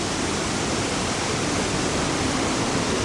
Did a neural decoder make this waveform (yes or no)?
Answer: no